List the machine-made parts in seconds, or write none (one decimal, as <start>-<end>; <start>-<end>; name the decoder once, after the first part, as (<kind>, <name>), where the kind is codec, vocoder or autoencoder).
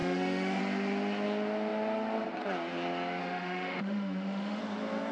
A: 0.0-0.6 (autoencoder, DAC-VAE); 3.2-4.6